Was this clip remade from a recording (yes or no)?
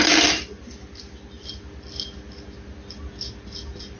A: no